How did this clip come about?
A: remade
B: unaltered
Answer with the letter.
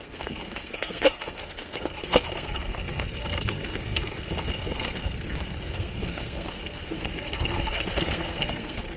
A